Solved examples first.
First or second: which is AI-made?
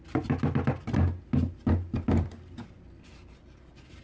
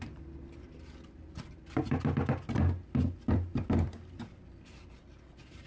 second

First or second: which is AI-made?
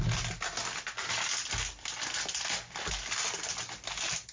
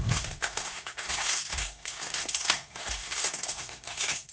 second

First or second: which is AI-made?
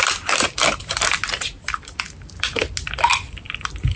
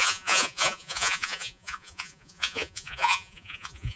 second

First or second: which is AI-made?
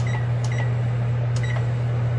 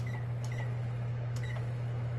second